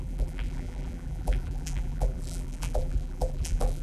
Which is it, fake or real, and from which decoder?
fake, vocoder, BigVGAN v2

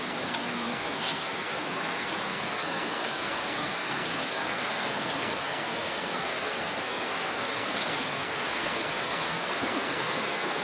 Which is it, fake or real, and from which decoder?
fake, codec, SNAC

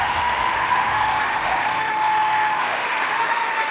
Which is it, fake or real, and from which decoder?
fake, autoencoder, DAC-VAE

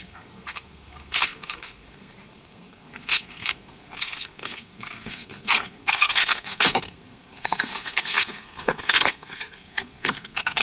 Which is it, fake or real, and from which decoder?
fake, codec, SNAC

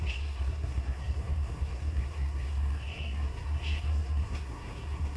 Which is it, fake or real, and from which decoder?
fake, codec, SNAC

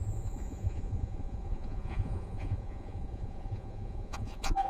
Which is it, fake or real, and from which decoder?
fake, vocoder, Vocos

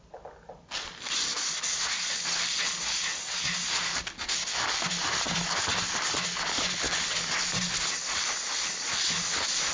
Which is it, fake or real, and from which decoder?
real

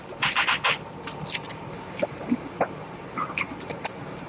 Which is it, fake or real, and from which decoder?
fake, vocoder, BigVGAN v2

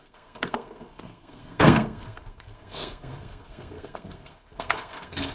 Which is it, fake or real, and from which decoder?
fake, codec, SNAC